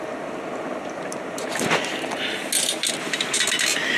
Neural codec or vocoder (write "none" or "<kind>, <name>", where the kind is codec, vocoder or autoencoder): none